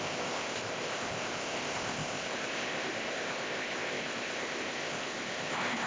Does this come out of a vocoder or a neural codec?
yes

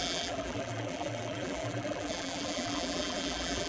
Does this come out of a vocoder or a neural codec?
yes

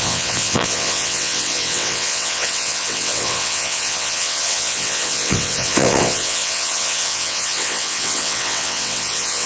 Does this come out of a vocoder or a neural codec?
yes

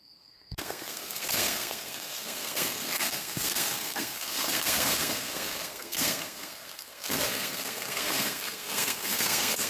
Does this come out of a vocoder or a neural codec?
yes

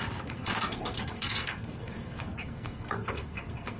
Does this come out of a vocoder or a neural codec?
yes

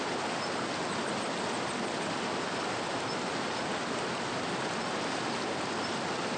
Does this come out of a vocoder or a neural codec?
no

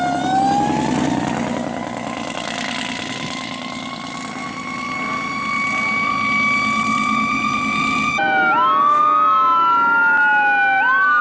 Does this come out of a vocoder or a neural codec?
no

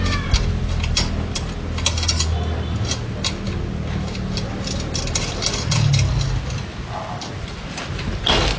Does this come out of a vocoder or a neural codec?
no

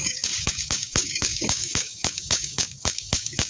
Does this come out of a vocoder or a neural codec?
yes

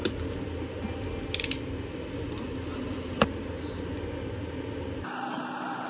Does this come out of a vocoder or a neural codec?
no